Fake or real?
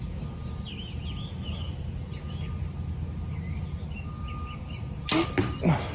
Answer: real